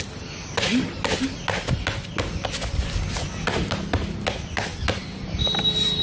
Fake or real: real